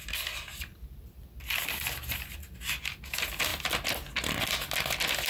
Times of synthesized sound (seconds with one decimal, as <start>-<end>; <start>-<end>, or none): none